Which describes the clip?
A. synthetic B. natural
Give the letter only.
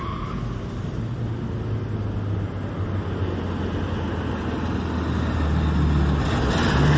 B